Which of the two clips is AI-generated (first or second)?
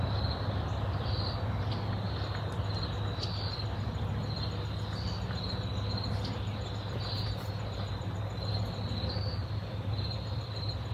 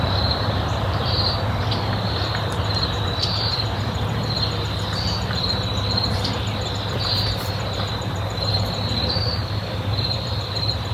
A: second